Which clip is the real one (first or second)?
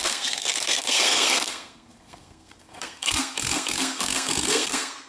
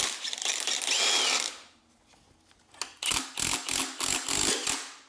second